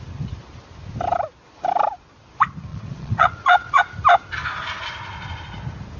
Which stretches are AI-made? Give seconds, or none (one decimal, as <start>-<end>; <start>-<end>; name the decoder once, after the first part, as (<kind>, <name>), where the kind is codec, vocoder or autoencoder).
2.7-3.8 (vocoder, Vocos)